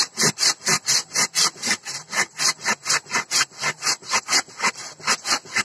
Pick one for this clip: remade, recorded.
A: recorded